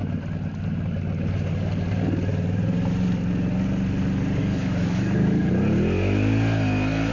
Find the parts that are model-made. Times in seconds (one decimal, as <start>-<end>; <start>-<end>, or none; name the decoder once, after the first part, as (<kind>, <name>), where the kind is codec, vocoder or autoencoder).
4.4-5.5 (codec, DAC)